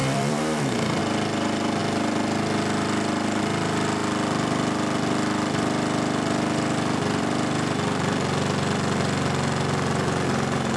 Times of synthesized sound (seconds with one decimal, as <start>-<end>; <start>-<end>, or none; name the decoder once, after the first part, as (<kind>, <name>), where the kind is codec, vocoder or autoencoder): 0.0-1.0 (vocoder, BigVGAN v2)